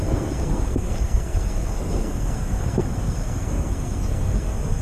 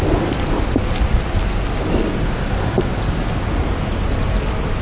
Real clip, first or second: second